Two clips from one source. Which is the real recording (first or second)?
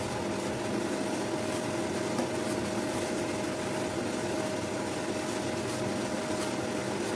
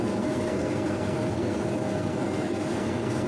first